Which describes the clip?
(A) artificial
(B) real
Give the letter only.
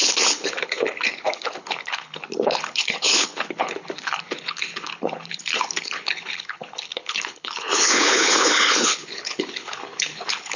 A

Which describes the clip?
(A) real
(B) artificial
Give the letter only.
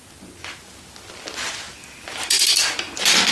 A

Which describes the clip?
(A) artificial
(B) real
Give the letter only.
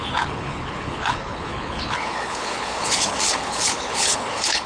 A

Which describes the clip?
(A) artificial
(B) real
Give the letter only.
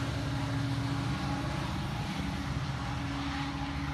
B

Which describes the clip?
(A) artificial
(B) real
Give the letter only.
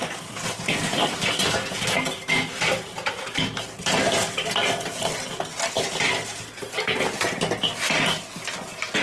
B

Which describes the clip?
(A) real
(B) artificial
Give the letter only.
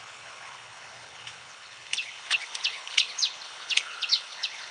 B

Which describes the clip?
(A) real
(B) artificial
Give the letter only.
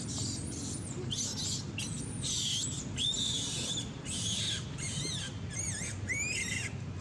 A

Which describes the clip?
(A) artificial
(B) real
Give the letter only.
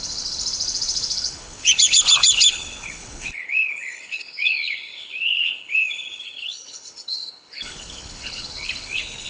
A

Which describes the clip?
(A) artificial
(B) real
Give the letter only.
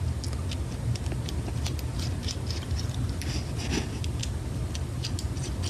B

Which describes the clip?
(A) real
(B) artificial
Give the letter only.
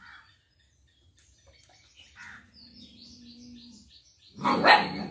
A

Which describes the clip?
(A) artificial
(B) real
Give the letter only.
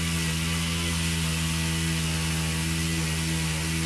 B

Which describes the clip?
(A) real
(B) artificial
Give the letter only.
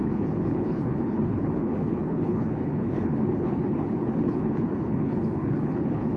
B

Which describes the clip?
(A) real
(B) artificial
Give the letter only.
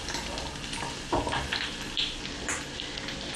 A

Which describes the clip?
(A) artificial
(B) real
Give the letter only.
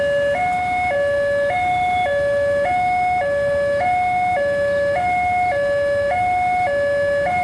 B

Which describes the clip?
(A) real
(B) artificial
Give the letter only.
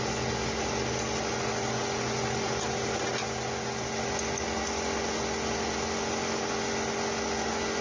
A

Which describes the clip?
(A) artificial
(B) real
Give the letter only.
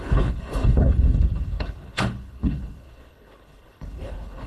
A